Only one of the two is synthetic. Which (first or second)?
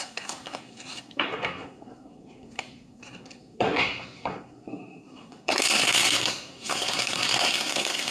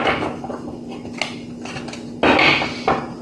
first